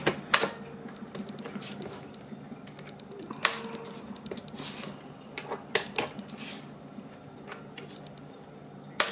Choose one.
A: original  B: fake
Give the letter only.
A